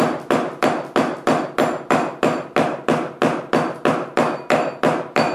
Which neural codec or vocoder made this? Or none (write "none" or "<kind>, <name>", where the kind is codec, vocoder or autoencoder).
none